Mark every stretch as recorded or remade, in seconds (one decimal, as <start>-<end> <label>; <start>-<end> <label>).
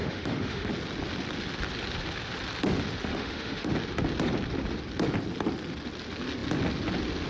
0.0-0.7 remade; 0.7-3.1 recorded; 3.1-3.7 remade; 3.7-7.3 recorded